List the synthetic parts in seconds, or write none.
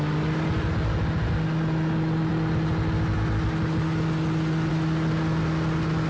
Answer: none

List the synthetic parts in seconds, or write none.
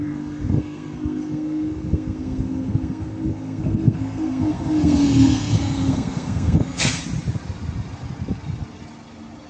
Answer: 0.0-7.0 (codec, SNAC)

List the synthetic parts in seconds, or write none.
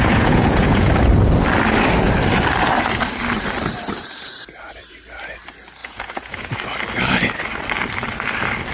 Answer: 0.0-0.9 (vocoder, Vocos); 5.8-6.5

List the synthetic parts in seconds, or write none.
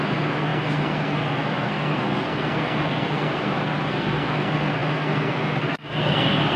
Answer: 0.0-6.6 (codec, SNAC)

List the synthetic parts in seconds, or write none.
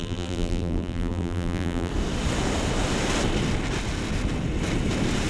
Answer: 0.0-1.9 (vocoder, BigVGAN v2)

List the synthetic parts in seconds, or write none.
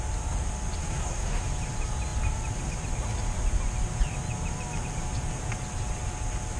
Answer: 0.8-1.4 (codec, SNAC)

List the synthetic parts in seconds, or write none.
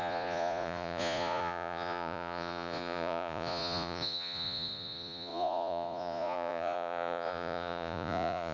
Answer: 0.0-8.5 (vocoder, Vocos)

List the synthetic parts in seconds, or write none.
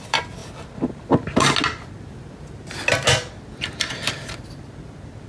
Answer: none